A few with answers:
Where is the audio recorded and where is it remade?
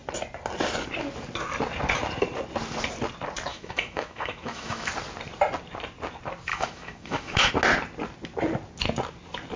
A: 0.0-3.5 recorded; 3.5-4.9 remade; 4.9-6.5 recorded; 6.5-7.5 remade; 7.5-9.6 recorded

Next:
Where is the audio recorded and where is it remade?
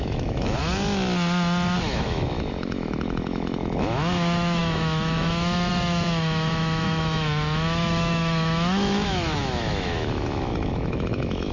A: 0.0-0.6 remade; 0.6-1.8 recorded; 1.8-11.5 remade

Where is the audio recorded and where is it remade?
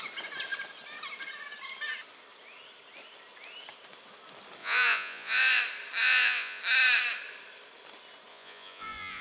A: 0.0-4.6 recorded; 4.6-5.6 remade; 5.6-6.0 recorded; 6.0-6.6 remade; 6.6-8.3 recorded; 8.3-9.2 remade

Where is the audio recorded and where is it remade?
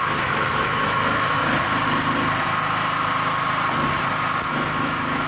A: 0.0-1.4 remade; 1.4-4.5 recorded; 4.5-5.3 remade